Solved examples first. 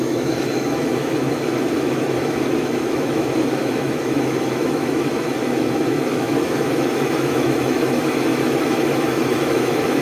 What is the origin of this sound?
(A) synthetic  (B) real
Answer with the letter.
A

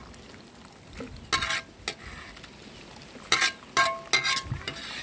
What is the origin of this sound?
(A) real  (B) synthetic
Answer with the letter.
A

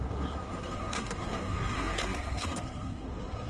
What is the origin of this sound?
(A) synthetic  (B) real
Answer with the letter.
A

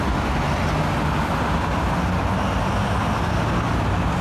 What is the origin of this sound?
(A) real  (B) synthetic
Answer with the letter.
A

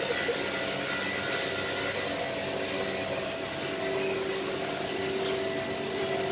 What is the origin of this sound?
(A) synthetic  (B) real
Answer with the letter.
B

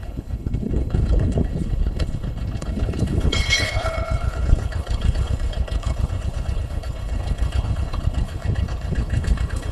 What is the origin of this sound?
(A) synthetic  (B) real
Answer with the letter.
A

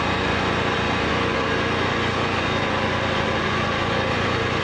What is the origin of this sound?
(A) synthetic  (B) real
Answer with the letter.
A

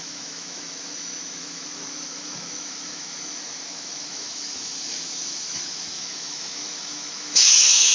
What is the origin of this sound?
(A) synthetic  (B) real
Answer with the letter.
A